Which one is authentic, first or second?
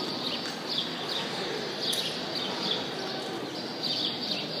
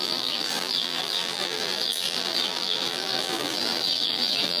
first